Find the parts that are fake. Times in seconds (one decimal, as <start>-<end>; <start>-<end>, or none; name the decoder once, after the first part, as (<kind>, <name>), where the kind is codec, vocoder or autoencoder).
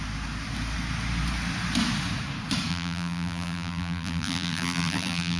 2.7-5.4 (vocoder, BigVGAN v2)